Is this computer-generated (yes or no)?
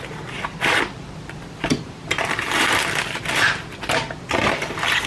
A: yes